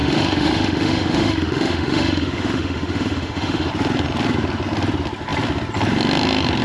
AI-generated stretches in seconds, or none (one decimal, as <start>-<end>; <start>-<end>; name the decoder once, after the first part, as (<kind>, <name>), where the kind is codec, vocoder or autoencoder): 0.0-3.7 (autoencoder, DAC-VAE)